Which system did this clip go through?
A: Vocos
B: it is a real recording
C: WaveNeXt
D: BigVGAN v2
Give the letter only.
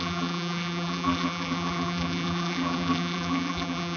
D